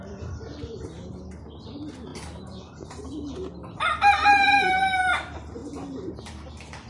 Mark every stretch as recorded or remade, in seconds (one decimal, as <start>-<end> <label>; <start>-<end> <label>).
0.0-2.1 recorded; 2.1-3.3 remade; 3.3-5.6 recorded; 5.6-6.5 remade; 6.5-6.9 recorded